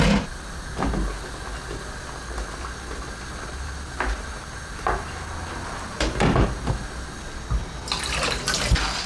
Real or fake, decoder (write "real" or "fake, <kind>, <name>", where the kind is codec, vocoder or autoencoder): real